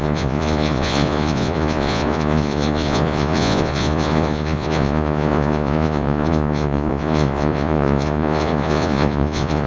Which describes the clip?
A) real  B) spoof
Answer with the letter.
B